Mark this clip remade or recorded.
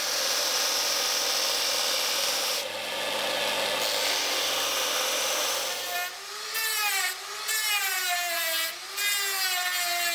recorded